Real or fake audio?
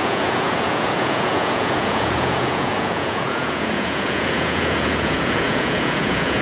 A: fake